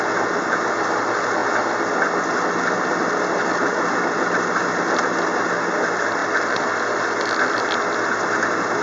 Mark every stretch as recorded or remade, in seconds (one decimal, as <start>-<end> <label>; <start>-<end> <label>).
0.0-8.8 recorded